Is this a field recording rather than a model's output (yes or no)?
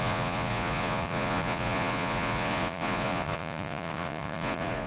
no